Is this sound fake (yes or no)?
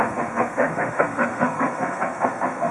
yes